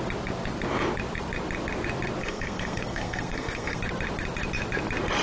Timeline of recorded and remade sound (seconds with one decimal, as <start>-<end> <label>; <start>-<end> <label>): 0.0-2.2 recorded; 2.2-3.8 remade; 3.8-5.2 recorded